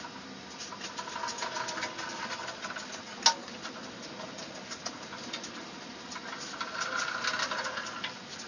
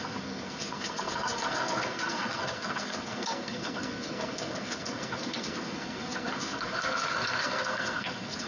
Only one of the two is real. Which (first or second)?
first